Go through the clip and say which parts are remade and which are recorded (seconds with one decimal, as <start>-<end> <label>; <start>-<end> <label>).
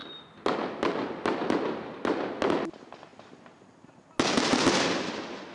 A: 0.0-5.5 recorded